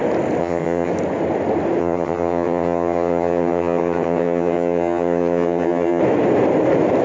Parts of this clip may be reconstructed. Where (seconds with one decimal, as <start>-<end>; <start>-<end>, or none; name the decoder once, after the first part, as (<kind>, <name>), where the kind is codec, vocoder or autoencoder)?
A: 0.4-0.9 (vocoder, HiFi-GAN); 1.8-6.0